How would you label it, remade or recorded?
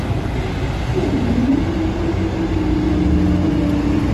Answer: recorded